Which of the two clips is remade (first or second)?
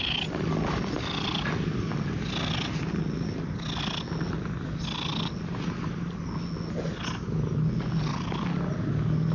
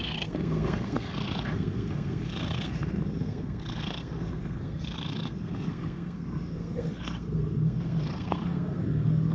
second